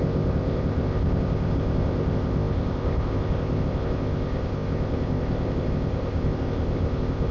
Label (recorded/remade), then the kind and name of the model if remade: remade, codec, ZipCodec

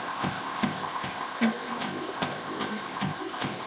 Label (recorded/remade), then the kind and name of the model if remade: remade, codec, ZipCodec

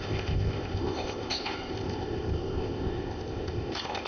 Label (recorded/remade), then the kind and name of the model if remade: remade, codec, ZipCodec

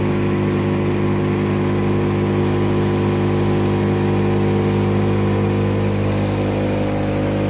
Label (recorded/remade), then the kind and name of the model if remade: recorded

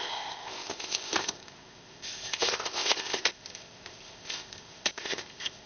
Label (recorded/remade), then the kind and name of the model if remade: remade, codec, ZipCodec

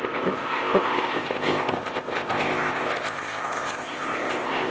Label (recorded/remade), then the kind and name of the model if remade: remade, codec, ZipCodec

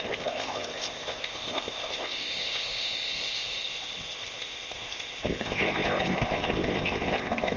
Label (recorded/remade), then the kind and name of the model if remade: remade, codec, ZipCodec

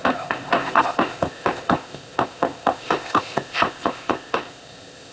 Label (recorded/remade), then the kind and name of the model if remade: remade, codec, ZipCodec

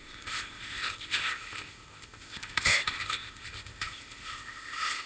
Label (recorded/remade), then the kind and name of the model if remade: remade, codec, ZipCodec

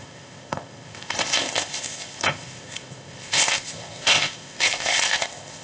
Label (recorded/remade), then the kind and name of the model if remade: remade, codec, ZipCodec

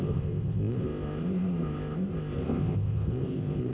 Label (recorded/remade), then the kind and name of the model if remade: remade, codec, ZipCodec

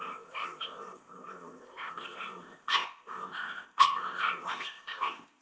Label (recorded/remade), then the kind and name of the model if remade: remade, codec, ZipCodec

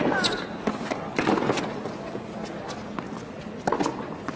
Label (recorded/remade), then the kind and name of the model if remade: recorded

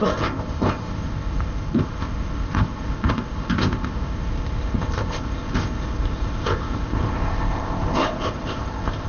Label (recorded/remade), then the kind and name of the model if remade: remade, codec, ZipCodec